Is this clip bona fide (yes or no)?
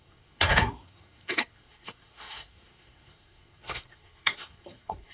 no